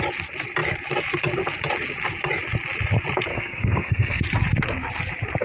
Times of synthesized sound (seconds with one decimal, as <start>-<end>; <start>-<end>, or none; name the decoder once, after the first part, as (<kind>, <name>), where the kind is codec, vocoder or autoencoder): 3.3-4.2 (codec, SNAC)